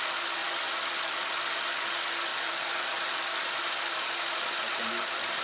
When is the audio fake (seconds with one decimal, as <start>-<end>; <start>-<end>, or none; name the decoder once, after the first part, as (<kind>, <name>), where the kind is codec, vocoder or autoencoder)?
0.4-1.3 (vocoder, BigVGAN v2); 2.3-3.6

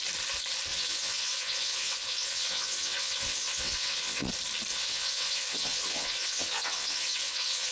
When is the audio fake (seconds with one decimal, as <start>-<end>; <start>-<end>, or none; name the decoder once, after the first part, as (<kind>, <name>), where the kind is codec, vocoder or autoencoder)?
0.7-4.3 (vocoder, WaveNeXt); 4.7-7.7

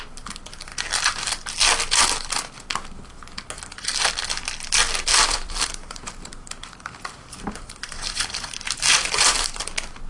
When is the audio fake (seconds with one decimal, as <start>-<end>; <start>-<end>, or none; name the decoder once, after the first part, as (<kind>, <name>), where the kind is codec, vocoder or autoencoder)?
5.1-9.6 (vocoder, BigVGAN v2)

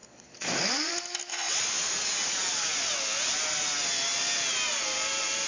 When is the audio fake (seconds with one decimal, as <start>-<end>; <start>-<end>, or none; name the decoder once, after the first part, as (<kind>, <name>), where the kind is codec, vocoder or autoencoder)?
0.0-0.9 (vocoder, Vocos); 1.3-1.9

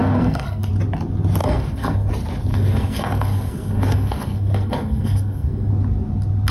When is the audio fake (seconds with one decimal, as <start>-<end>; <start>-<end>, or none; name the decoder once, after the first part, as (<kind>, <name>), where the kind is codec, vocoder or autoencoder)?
0.0-0.7 (codec, SNAC); 1.4-2.1; 2.5-5.7

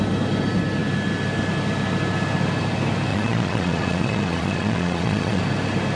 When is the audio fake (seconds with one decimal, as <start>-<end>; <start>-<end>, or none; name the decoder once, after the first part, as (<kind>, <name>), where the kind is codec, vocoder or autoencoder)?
3.1-5.4 (vocoder, Vocos)

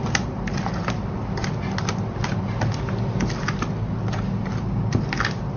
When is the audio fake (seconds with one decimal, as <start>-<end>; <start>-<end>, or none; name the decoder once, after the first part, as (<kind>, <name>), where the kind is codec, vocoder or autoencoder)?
none